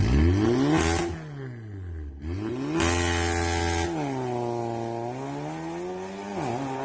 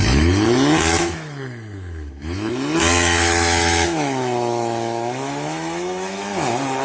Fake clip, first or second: second